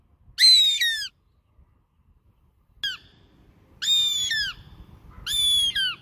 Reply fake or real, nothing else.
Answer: real